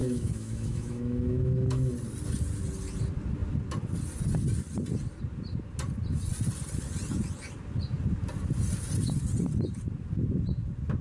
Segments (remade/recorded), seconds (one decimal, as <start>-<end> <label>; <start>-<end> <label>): 0.0-1.9 remade; 1.9-11.0 recorded